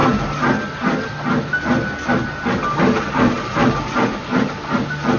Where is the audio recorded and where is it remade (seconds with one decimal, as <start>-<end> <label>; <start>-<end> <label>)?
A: 0.0-5.2 recorded